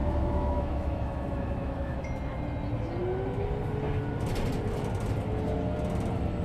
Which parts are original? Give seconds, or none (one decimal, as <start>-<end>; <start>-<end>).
2.0-6.4